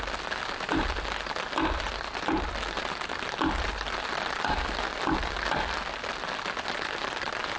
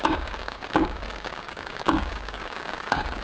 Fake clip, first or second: second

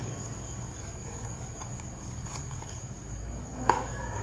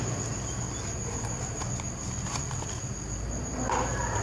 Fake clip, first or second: first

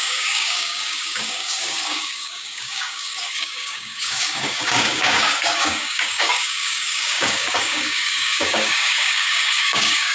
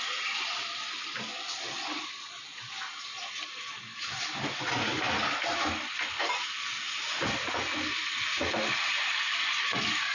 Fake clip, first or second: first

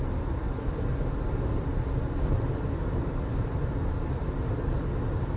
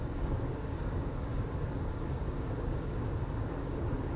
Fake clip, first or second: second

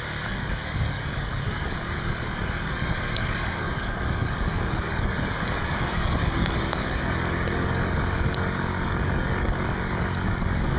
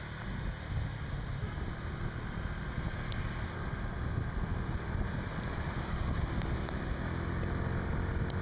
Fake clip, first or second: first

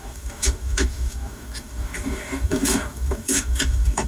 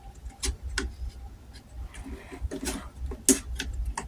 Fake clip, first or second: first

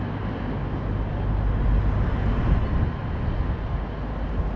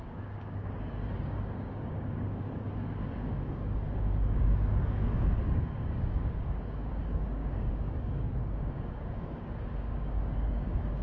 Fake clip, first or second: second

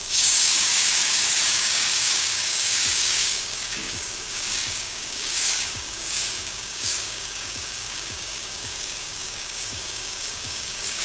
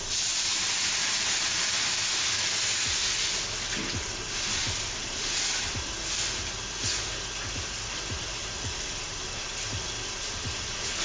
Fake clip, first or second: first